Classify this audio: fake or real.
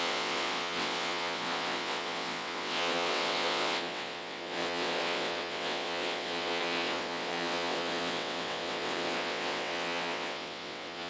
fake